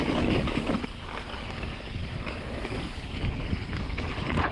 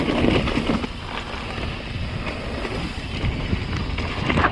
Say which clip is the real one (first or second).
second